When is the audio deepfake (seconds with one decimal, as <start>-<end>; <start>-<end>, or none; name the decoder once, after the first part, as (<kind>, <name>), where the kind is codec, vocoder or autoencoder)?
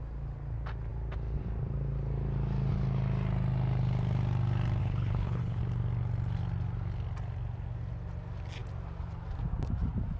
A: 4.8-5.6 (codec, HILCodec)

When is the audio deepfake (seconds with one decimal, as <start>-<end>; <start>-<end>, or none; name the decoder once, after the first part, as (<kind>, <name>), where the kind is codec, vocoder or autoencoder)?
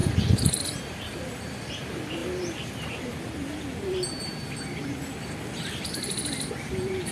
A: none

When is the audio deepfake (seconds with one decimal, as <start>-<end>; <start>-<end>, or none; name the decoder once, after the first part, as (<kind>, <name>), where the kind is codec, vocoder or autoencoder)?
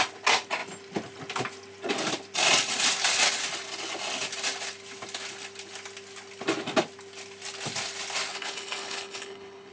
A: 8.3-9.7 (codec, HILCodec)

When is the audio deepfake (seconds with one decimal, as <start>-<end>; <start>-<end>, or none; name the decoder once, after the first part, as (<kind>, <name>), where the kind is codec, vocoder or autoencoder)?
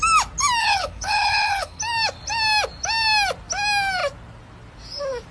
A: 0.6-1.8 (codec, HILCodec)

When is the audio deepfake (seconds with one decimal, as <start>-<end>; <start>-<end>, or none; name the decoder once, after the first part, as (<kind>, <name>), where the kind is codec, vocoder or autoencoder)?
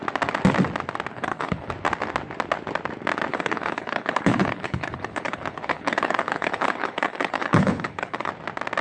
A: 1.1-1.7 (codec, HILCodec); 3.3-8.3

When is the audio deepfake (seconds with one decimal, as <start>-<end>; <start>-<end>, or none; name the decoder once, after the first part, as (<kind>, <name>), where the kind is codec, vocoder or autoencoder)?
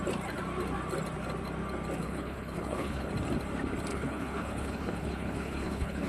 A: 2.0-3.1 (codec, HILCodec); 3.9-6.1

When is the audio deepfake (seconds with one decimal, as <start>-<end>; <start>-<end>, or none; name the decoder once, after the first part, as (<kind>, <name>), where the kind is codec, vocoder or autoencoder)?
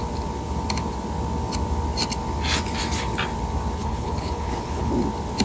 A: 3.8-4.9 (codec, HILCodec)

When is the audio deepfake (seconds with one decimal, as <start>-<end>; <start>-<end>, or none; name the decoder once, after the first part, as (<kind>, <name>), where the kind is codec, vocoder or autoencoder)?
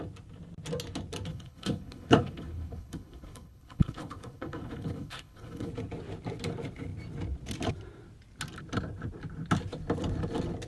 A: 1.3-5.7 (codec, HILCodec)